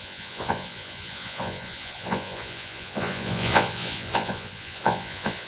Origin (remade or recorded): remade